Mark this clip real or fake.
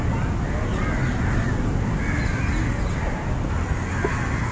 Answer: real